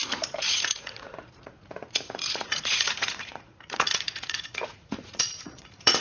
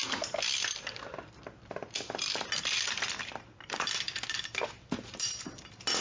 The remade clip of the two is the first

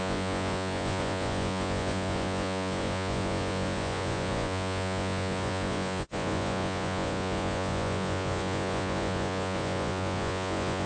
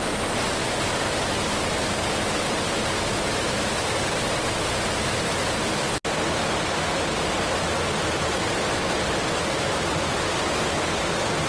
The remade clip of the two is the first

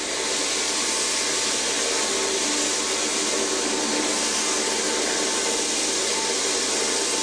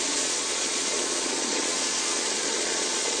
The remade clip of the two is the second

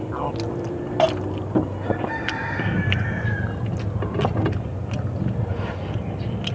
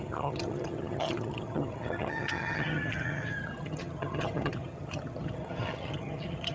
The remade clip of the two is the second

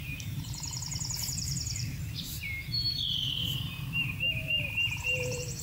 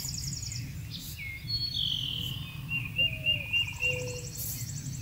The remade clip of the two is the first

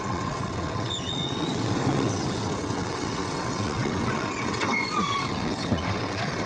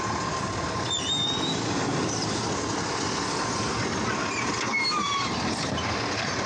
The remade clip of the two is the first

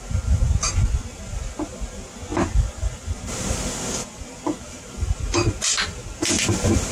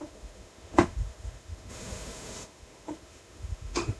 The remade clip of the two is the second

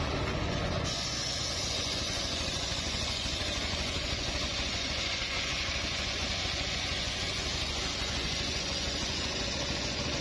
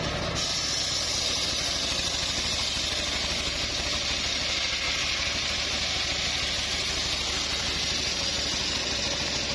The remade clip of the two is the first